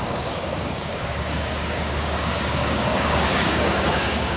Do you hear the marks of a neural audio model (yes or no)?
yes